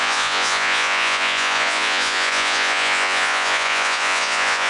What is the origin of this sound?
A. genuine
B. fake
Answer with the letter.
B